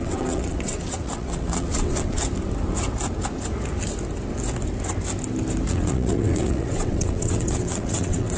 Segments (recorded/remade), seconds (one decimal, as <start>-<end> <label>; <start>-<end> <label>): 0.0-2.2 remade; 2.2-5.7 recorded; 5.7-8.4 remade